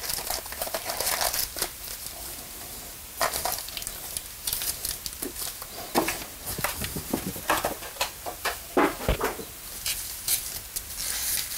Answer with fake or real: real